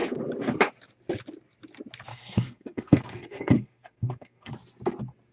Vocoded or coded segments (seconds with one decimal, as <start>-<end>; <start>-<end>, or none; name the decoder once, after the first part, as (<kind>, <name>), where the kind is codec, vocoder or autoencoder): 2.1-4.5 (codec, SNAC)